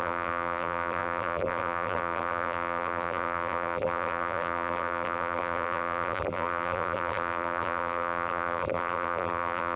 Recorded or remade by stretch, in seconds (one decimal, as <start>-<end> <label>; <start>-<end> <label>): 0.0-9.8 remade